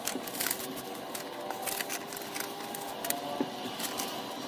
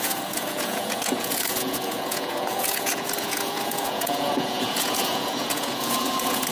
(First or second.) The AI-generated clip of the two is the second